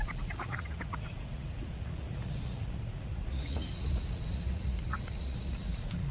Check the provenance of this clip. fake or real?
fake